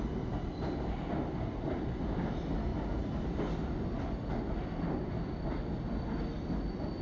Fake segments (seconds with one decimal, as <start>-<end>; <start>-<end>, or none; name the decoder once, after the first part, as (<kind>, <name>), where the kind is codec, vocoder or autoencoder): none